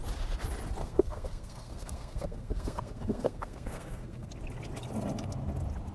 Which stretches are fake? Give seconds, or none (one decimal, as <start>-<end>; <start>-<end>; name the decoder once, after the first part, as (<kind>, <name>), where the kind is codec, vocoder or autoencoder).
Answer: 0.8-4.3 (codec, SNAC)